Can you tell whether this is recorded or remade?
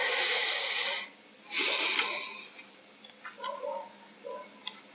recorded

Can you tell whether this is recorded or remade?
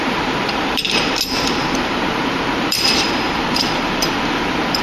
remade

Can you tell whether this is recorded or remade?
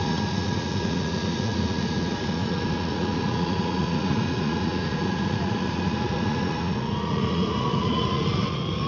remade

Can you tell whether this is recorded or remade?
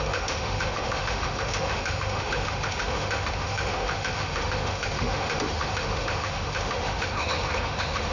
remade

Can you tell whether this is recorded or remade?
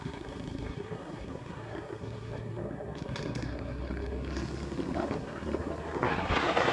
remade